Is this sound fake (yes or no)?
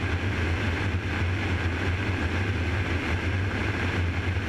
no